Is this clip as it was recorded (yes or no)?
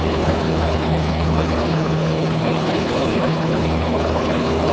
no